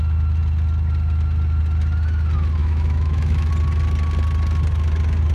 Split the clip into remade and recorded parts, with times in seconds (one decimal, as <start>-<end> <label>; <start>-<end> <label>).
0.0-2.6 recorded; 2.6-3.5 remade; 3.5-5.3 recorded